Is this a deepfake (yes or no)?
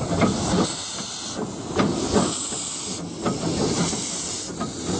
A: no